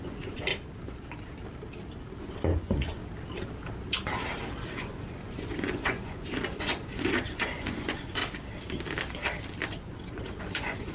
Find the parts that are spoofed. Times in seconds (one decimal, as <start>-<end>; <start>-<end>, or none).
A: 0.0-0.5; 2.2-3.0; 4.7-8.2; 9.7-10.9